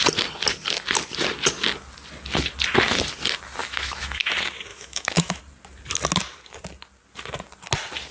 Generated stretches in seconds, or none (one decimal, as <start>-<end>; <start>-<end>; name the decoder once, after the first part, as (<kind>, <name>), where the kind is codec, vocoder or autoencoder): 3.6-4.3 (autoencoder, DAC-VAE); 4.7-5.4